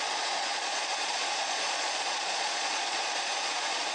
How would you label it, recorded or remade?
remade